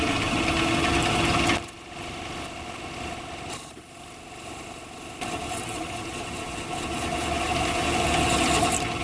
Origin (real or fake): real